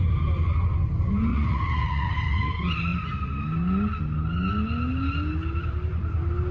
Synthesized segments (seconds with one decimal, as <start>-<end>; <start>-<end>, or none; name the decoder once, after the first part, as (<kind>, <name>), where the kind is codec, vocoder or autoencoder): 1.3-2.1 (vocoder, Vocos)